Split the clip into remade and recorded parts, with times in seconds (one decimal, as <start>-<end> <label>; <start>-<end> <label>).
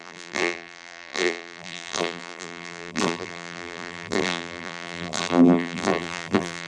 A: 0.0-6.7 remade